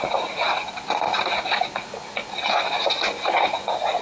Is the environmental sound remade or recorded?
recorded